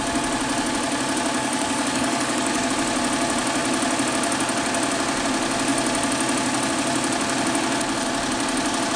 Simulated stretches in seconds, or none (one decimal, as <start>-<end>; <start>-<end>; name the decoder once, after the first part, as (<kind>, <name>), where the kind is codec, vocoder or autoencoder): 1.4-2.7 (codec, DAC)